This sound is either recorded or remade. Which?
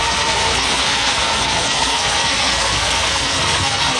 remade